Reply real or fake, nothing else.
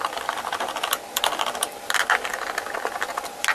real